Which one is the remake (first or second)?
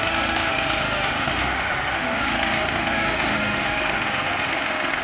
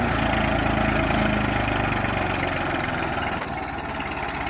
first